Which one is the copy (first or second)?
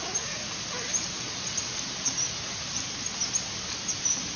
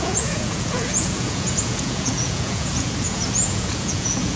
second